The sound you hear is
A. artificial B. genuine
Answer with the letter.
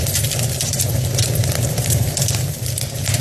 B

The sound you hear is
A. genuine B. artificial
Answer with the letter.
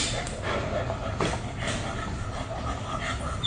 A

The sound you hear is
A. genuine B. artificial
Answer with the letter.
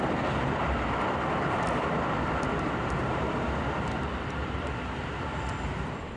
B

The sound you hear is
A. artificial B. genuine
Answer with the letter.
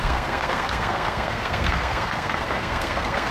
A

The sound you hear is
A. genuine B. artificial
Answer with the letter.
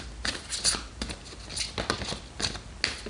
A